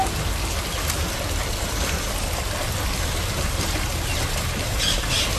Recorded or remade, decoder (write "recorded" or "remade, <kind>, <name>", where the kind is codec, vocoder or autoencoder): recorded